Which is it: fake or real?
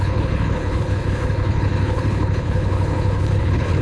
fake